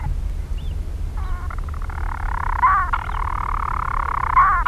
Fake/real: real